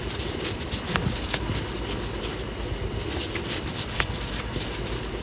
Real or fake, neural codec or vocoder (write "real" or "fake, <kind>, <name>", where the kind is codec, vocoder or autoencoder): real